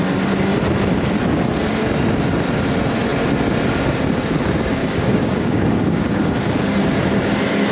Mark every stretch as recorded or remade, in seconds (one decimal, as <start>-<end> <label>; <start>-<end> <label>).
0.0-4.8 recorded; 4.8-6.3 remade; 6.3-7.7 recorded